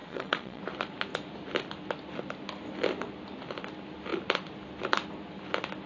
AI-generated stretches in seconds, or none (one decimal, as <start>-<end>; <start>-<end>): 0.0-0.6